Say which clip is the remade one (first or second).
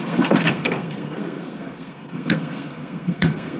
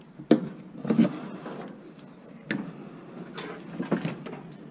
first